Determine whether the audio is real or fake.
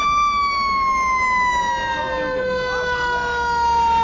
real